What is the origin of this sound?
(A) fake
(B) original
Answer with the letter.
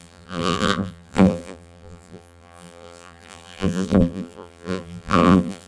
A